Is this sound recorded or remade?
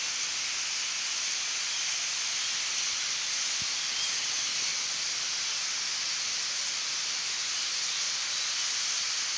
recorded